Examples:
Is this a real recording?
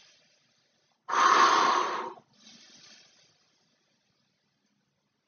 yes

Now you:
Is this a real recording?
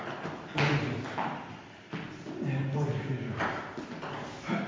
yes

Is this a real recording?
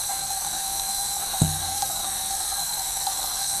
no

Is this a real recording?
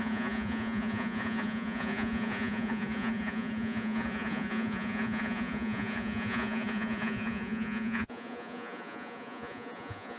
no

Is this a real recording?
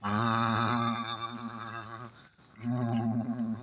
yes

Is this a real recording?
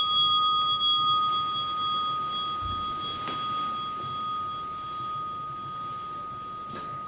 yes